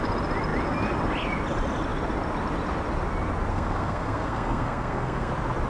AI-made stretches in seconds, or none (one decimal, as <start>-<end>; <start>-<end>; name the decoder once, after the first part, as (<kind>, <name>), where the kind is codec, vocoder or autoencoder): 3.5-5.3 (codec, SNAC)